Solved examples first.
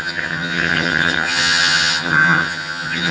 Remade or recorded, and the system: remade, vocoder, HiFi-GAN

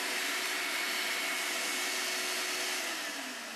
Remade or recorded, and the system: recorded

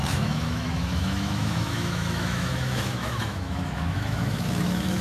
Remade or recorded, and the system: remade, autoencoder, DAC-VAE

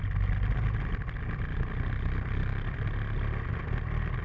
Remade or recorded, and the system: recorded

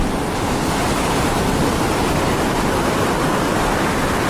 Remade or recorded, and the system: recorded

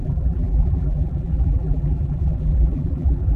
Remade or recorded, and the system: remade, vocoder, BigVGAN v2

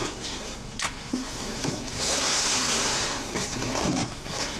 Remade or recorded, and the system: remade, codec, SNAC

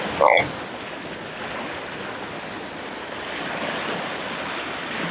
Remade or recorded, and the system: recorded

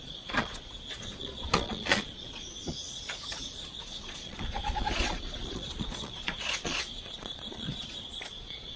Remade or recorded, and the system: remade, vocoder, Vocos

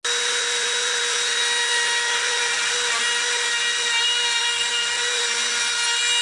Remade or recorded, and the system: recorded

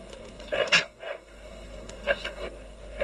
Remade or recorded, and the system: remade, codec, SNAC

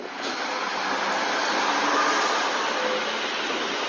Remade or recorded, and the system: recorded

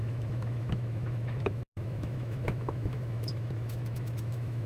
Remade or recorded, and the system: remade, autoencoder, DAC-VAE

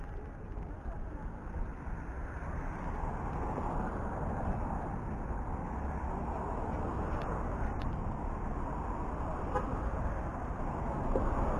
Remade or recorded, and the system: recorded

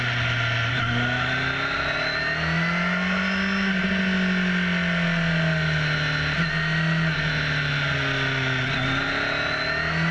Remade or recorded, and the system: recorded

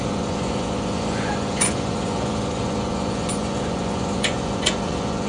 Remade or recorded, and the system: remade, vocoder, Vocos